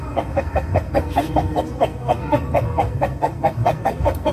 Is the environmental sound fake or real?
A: fake